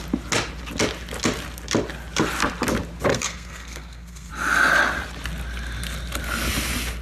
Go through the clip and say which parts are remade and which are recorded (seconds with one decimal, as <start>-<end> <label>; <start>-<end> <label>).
0.0-3.1 recorded; 3.1-4.3 remade; 4.3-7.0 recorded